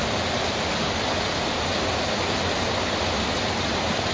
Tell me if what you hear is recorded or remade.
recorded